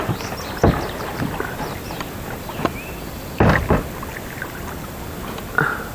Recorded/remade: recorded